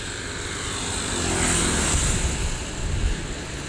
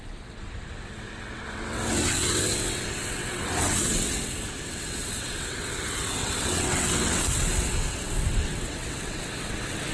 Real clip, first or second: first